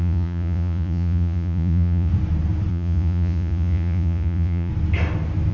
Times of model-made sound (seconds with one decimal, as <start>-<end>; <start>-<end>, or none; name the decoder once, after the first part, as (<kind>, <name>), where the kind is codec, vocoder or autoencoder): 0.0-2.1 (vocoder, Vocos); 2.7-4.7